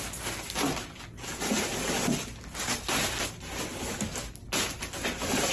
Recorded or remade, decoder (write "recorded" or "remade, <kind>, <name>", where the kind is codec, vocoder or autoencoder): recorded